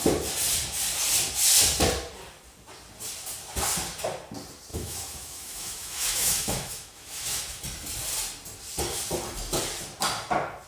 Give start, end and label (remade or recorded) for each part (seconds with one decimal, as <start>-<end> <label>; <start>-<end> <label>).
0.0-4.7 recorded; 4.7-7.6 remade; 7.6-10.7 recorded